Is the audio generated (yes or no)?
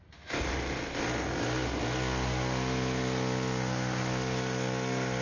no